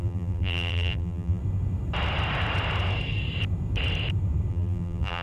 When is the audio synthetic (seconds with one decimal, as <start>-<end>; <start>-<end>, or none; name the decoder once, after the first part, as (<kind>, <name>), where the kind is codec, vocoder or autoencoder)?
0.0-1.4 (vocoder, BigVGAN v2); 4.5-5.2